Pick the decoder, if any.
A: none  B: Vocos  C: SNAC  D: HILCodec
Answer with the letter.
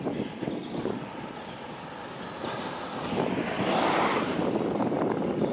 A